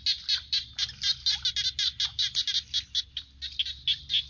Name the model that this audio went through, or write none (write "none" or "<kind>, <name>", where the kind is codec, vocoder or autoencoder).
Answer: none